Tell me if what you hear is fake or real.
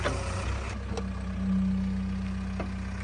real